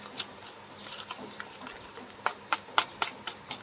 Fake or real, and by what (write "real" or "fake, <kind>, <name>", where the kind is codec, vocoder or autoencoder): real